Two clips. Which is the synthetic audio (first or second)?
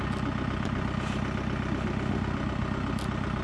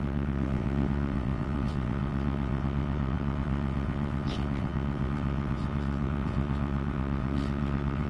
second